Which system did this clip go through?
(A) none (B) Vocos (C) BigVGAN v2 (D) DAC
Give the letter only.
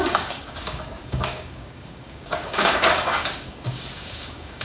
D